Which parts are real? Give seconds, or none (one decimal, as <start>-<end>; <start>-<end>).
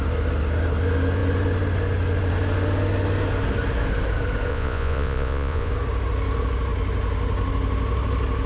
0.0-4.5; 5.7-8.5